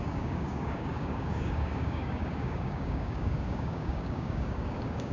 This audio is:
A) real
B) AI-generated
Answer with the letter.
B